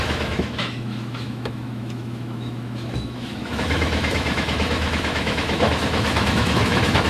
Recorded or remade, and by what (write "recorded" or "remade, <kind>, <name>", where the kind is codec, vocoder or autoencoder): remade, autoencoder, DAC-VAE